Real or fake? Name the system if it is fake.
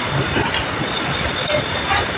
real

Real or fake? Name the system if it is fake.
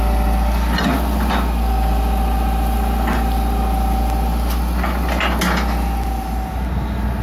real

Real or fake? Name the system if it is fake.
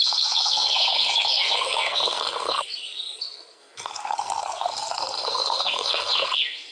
fake, codec, SNAC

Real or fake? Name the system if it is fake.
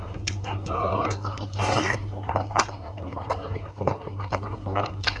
fake, codec, SNAC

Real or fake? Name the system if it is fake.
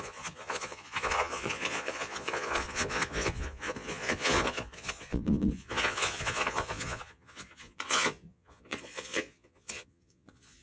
fake, vocoder, Vocos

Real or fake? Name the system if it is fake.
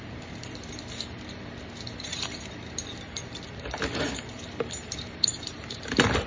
fake, vocoder, BigVGAN v2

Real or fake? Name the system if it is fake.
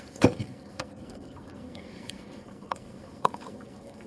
fake, codec, SNAC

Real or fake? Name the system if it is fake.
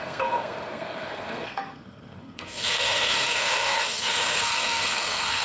fake, codec, SNAC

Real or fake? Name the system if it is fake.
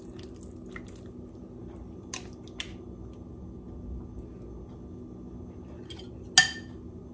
real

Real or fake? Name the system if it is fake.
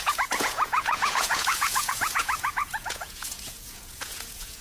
fake, vocoder, Vocos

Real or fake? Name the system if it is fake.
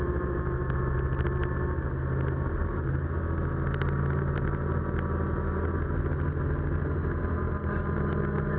real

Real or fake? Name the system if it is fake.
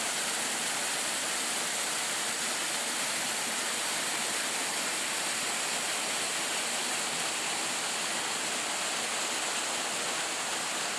real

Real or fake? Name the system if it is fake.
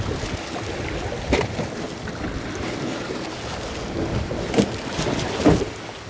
real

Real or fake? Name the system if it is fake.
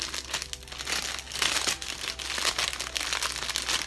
real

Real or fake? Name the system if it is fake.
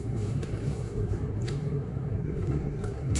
fake, codec, SNAC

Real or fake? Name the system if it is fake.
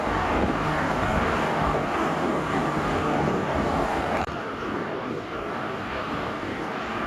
fake, codec, DAC